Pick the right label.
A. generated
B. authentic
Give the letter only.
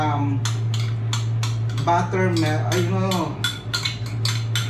B